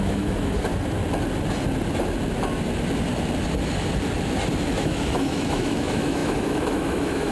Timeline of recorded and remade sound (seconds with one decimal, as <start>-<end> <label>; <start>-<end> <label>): 0.0-0.7 remade; 0.7-4.8 recorded; 4.8-7.3 remade